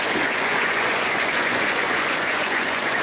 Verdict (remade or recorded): remade